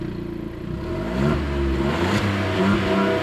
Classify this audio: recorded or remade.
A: recorded